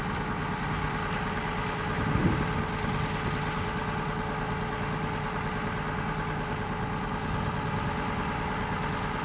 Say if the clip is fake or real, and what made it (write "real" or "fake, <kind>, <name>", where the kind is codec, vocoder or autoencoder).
real